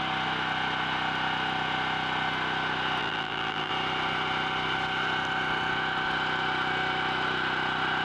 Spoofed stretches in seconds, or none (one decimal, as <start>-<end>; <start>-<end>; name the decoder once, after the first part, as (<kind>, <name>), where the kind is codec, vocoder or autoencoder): 3.0-3.7 (vocoder, BigVGAN v2)